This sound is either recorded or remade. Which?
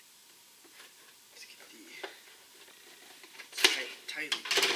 recorded